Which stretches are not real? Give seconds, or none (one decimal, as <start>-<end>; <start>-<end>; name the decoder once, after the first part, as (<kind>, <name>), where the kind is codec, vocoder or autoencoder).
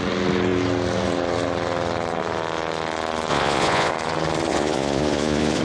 3.3-3.9 (vocoder, Vocos); 4.5-5.6